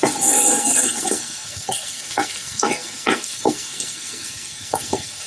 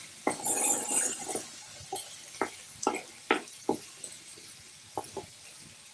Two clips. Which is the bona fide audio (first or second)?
second